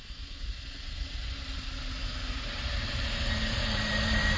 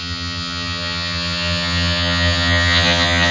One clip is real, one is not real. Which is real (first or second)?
first